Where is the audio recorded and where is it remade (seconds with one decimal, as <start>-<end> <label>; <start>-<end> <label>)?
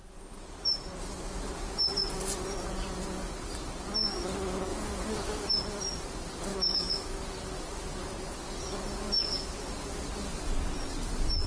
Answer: 0.0-6.5 recorded; 6.5-7.2 remade; 7.2-11.5 recorded